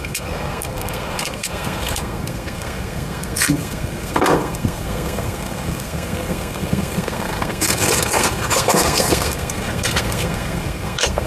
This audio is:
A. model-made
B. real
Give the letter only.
A